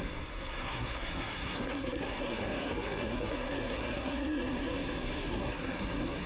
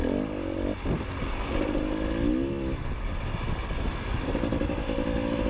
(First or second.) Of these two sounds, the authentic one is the second